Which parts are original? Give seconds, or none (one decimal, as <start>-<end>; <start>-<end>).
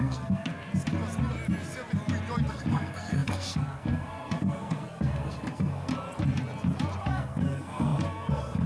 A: 0.5-2.5; 5.9-7.0